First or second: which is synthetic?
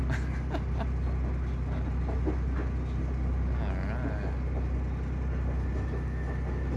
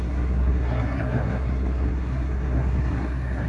second